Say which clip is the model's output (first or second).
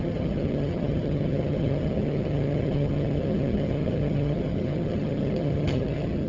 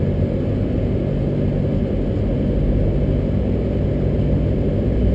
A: first